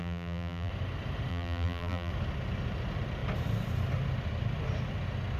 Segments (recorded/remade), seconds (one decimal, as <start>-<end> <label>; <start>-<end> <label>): 0.0-0.7 remade; 0.7-1.3 recorded; 1.3-2.1 remade; 2.1-5.4 recorded